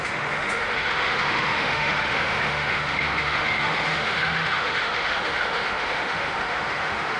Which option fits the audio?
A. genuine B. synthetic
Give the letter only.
B